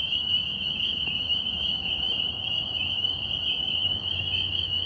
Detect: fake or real fake